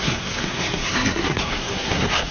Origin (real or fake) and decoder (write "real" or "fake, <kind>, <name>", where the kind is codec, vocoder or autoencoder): fake, codec, SNAC